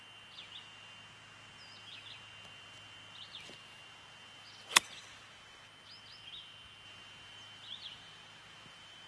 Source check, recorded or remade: recorded